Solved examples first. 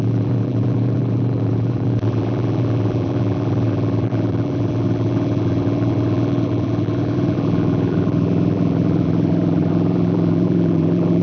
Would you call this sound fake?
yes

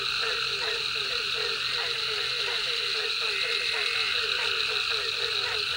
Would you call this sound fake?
no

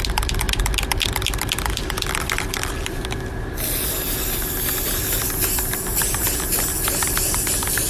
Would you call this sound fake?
no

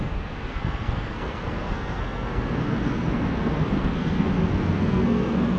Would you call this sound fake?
yes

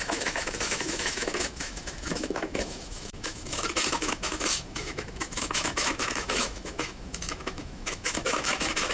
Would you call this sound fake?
yes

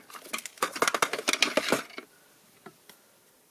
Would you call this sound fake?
no